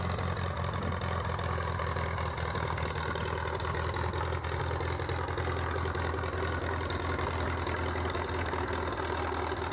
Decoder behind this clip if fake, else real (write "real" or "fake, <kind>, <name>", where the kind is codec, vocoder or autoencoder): real